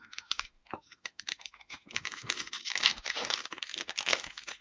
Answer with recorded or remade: remade